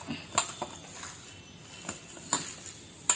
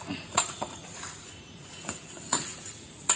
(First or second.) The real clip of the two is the first